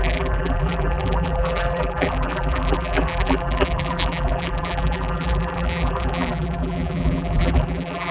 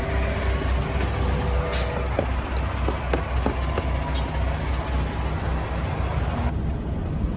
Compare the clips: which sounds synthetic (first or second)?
first